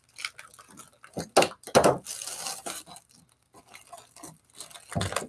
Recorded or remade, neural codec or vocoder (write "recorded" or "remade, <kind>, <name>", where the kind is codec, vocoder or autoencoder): recorded